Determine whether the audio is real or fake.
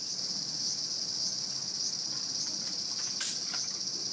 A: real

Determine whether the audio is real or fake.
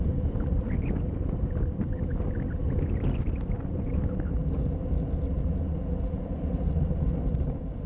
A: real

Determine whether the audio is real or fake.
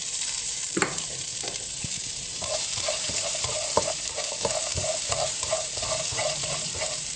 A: fake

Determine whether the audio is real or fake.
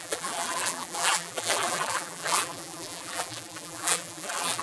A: fake